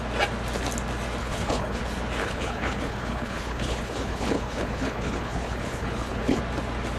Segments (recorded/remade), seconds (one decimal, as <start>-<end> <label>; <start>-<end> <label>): 0.0-1.2 recorded; 1.2-1.8 remade; 1.8-2.2 recorded; 2.2-6.4 remade; 6.4-7.0 recorded